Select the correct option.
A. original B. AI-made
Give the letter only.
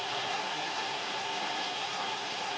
B